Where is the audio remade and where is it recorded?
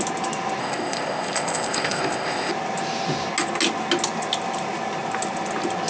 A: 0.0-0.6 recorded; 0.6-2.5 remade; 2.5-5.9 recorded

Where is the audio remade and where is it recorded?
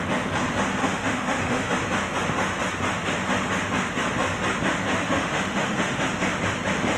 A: 0.0-0.8 recorded; 0.8-1.7 remade; 1.7-5.0 recorded; 5.0-6.0 remade; 6.0-7.0 recorded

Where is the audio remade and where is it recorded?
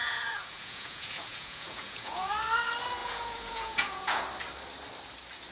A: 0.0-2.3 remade; 2.3-3.0 recorded; 3.0-4.2 remade; 4.2-5.5 recorded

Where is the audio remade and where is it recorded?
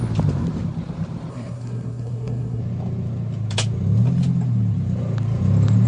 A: 0.0-1.3 recorded; 1.3-2.6 remade; 2.6-5.9 recorded